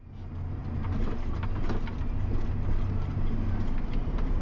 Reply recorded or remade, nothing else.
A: recorded